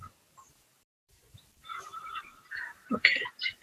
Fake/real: fake